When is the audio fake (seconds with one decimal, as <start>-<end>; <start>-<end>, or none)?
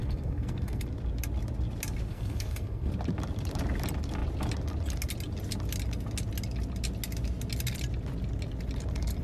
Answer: 0.0-0.8; 2.1-2.9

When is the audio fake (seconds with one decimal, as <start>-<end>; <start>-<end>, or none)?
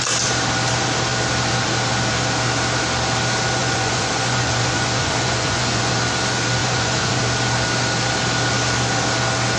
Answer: 3.6-5.9; 6.6-7.2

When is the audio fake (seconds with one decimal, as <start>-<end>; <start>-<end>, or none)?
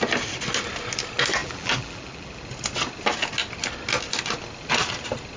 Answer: 1.4-2.4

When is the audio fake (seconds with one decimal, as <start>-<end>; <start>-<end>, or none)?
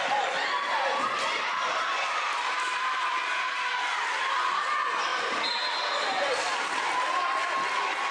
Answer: none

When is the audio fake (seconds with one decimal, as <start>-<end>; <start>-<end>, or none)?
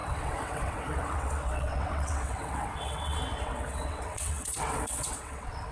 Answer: 0.0-5.7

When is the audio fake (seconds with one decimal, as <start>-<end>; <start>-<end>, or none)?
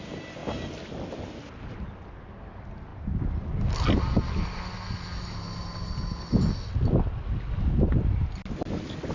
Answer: none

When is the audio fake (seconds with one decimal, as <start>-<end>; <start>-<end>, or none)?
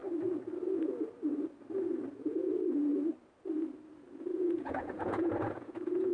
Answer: 2.1-2.9; 4.3-6.1